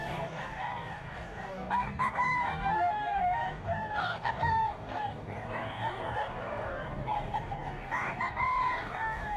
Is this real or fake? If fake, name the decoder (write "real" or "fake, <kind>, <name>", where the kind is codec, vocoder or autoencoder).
fake, codec, DAC